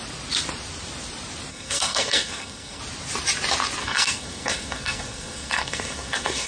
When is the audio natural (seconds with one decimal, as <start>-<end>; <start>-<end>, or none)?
0.0-1.5; 2.8-3.8